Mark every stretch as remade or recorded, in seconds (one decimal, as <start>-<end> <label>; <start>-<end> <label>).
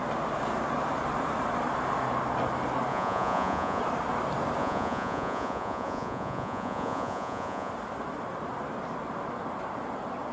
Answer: 0.0-2.9 recorded; 2.9-3.8 remade; 3.8-4.6 recorded; 4.6-7.7 remade; 7.7-10.3 recorded